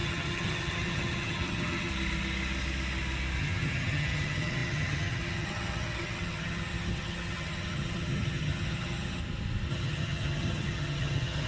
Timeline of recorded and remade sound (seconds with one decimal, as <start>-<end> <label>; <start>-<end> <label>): 0.0-1.9 remade; 1.9-3.4 recorded; 3.4-9.2 remade; 9.2-9.7 recorded; 9.7-11.5 remade